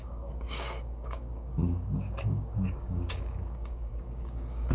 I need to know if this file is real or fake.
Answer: fake